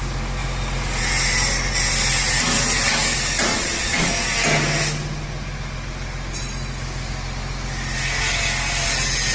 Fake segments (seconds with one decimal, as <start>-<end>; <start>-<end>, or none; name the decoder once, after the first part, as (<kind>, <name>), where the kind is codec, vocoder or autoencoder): 3.5-4.1 (vocoder, Vocos)